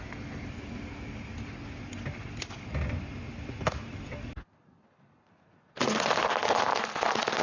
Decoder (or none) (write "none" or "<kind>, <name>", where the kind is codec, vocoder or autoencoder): none